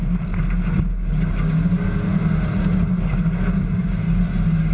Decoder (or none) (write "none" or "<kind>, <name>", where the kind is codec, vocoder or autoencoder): none